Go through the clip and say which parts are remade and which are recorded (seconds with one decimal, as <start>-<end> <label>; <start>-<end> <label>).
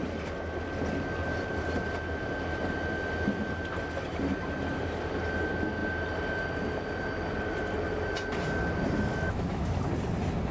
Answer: 0.0-9.1 recorded; 9.1-9.7 remade; 9.7-10.5 recorded